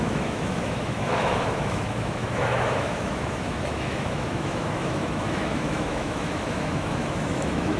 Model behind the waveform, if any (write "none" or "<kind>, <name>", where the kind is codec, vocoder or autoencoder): autoencoder, DAC-VAE